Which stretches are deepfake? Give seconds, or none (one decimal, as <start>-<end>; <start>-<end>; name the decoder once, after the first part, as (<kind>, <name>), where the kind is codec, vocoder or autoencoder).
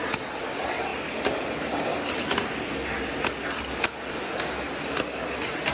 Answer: none